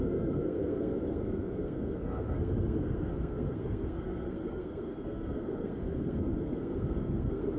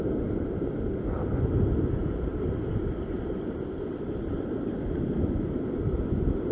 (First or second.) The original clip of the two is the second